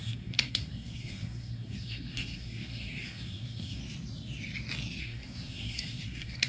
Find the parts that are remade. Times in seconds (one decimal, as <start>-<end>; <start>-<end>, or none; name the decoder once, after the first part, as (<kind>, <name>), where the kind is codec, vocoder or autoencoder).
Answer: 0.0-3.8 (codec, SNAC); 5.0-6.5